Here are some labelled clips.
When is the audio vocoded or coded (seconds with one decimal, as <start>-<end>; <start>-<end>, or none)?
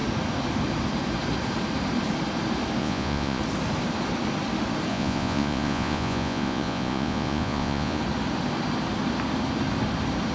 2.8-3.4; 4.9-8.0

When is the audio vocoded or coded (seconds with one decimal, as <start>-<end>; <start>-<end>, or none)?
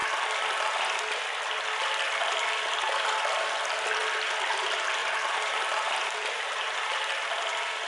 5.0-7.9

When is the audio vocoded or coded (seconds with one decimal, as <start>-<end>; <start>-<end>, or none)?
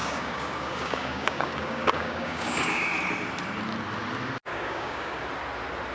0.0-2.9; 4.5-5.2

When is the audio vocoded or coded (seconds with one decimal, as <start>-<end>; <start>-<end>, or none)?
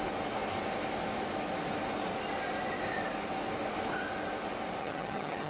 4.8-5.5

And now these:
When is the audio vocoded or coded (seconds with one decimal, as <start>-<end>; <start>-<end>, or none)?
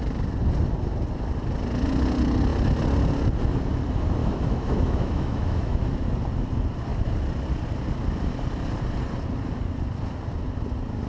4.2-5.8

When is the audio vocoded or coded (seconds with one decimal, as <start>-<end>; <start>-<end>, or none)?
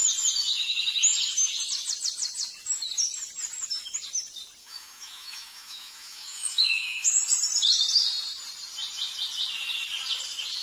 4.6-7.1